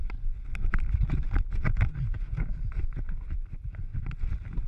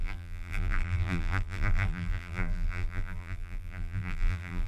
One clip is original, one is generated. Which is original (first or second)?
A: first